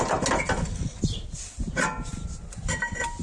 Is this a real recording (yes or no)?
yes